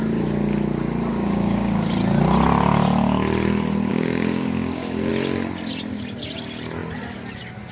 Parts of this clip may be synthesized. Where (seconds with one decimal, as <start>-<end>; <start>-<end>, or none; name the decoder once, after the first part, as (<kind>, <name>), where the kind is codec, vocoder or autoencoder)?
1.1-1.9 (codec, DAC); 3.9-5.1